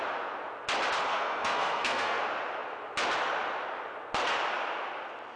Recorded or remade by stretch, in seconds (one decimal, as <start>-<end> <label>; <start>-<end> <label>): 0.0-1.1 recorded; 1.1-2.2 remade; 2.2-5.4 recorded